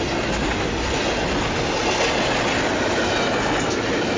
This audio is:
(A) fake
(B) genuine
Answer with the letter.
B